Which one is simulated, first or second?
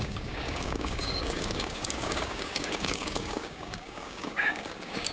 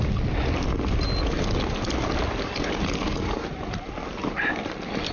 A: first